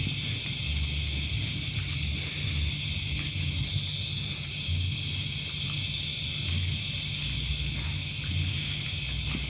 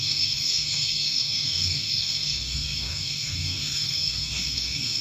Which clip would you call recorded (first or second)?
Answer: first